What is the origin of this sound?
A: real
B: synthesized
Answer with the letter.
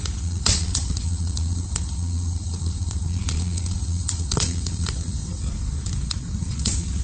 B